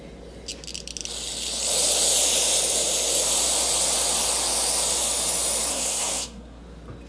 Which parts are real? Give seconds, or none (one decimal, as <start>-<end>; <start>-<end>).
0.0-5.7; 6.6-7.1

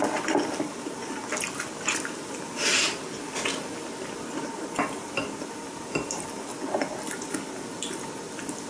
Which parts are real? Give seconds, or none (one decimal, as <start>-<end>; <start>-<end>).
0.0-8.7

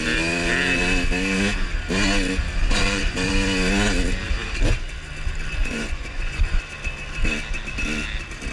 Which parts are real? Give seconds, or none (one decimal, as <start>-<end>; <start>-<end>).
0.0-2.6; 3.3-5.6; 6.6-8.5

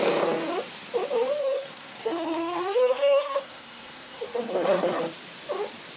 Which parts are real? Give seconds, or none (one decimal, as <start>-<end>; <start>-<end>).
0.0-1.4; 5.0-6.0

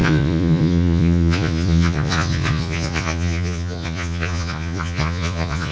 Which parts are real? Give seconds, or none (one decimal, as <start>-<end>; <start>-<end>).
none